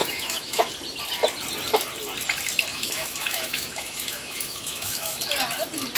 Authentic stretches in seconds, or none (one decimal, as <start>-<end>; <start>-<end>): 0.7-2.7; 5.2-6.0